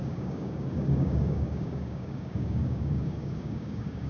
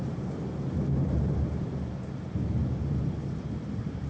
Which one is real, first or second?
second